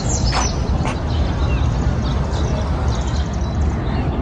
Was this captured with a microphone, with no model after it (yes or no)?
yes